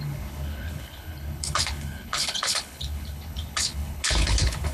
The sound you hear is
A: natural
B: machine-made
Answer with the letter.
B